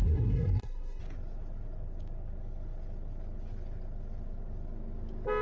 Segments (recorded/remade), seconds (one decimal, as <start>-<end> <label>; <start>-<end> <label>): 0.0-1.0 remade; 1.0-5.4 recorded

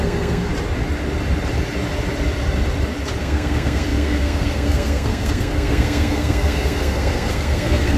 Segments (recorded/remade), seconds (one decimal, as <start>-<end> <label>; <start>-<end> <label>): 0.0-0.5 remade; 0.5-3.2 recorded; 3.2-8.0 remade

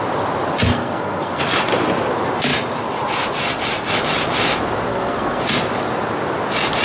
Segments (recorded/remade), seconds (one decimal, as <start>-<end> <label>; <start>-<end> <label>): 0.0-0.7 recorded; 0.7-1.4 remade; 1.4-4.9 recorded; 4.9-5.4 remade; 5.4-6.8 recorded

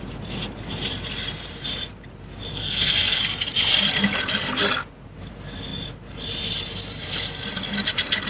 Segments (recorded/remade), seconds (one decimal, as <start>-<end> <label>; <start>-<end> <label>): 0.0-2.5 recorded; 2.5-3.2 remade; 3.2-8.3 recorded